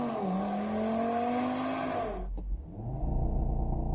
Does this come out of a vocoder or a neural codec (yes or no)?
no